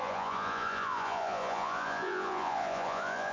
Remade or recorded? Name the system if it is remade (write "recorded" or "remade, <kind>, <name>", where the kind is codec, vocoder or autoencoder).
remade, vocoder, Vocos